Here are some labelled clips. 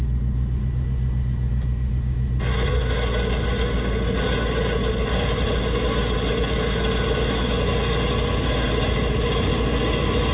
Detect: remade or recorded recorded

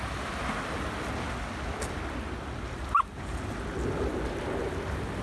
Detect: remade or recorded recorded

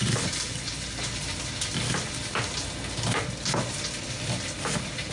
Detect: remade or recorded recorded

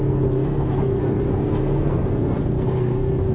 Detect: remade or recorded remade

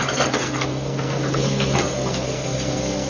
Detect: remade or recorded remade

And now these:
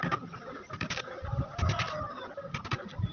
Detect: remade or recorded recorded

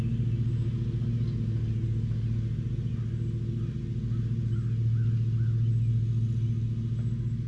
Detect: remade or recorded recorded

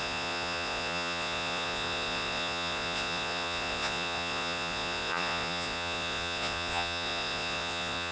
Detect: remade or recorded remade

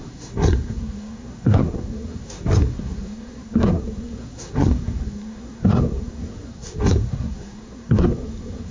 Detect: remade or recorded remade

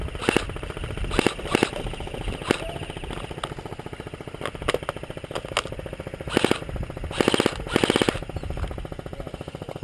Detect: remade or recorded recorded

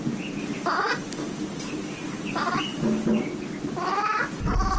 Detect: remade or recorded recorded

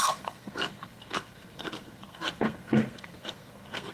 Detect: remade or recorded remade